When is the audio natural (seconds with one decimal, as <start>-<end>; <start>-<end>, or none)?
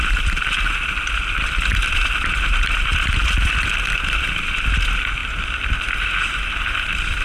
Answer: 0.0-7.2